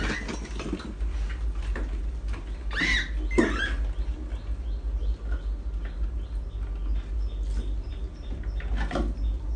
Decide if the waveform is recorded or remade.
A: recorded